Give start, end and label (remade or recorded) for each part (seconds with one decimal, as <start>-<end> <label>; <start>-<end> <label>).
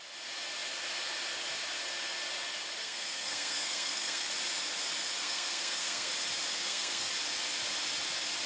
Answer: 0.0-2.8 recorded; 2.8-4.3 remade; 4.3-5.2 recorded; 5.2-6.1 remade; 6.1-6.5 recorded; 6.5-7.1 remade; 7.1-8.5 recorded